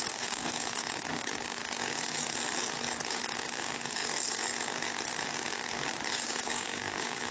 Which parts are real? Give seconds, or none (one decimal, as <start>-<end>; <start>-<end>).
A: 1.6-3.3; 4.0-6.1

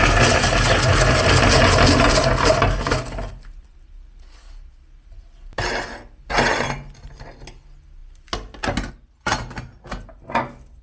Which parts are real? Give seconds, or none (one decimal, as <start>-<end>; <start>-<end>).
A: 0.0-10.8

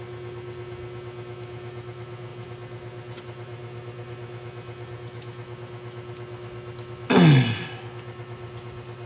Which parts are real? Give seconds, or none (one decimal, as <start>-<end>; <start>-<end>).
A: 0.0-9.1

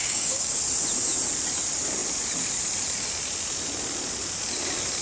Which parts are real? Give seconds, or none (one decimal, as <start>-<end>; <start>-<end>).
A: 0.6-5.0

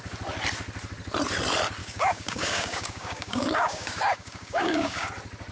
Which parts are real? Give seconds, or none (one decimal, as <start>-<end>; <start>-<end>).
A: 0.0-1.8; 5.1-5.5